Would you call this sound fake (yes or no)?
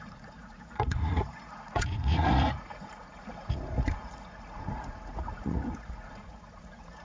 yes